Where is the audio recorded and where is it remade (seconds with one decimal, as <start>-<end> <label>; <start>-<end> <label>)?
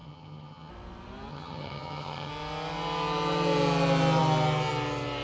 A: 0.0-0.7 remade; 0.7-1.3 recorded; 1.3-2.3 remade; 2.3-5.2 recorded